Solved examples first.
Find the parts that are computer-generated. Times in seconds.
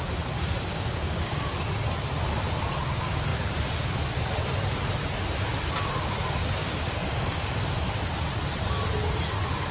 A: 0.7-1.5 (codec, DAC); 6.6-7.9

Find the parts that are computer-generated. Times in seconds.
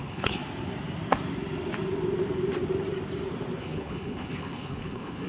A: 0.0-0.4 (codec, HILCodec); 3.6-5.3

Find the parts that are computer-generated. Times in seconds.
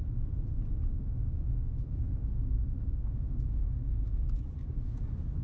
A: 1.0-4.2 (autoencoder, DAC-VAE)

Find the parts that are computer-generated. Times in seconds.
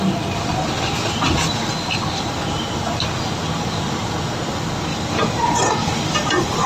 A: 4.9-6.7 (vocoder, BigVGAN v2)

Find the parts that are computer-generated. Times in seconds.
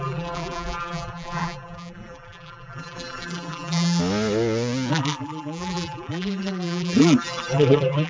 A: 0.0-4.0 (vocoder, BigVGAN v2); 4.9-8.1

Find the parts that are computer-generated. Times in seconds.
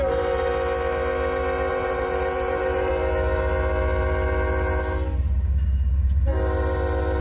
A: 0.0-0.5 (vocoder, BigVGAN v2); 1.7-2.9; 5.2-6.3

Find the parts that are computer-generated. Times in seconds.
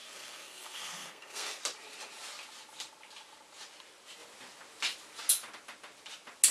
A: 0.0-1.6 (codec, SNAC)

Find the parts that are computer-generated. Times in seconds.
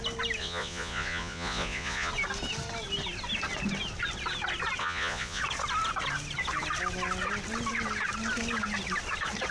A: 0.4-2.1 (vocoder, Vocos); 4.8-5.4